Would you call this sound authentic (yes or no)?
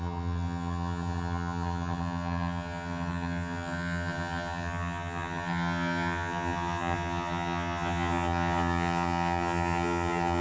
no